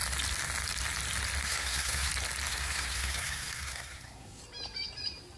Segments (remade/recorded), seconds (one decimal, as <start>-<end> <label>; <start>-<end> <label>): 0.0-1.4 recorded; 1.4-2.1 remade; 2.1-2.5 recorded; 2.5-4.4 remade; 4.4-5.4 recorded